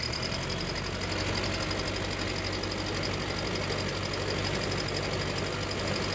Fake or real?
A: real